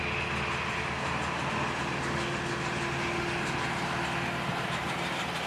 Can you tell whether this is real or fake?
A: real